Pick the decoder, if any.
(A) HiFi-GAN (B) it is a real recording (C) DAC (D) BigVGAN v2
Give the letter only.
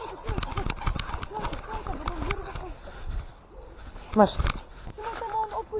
B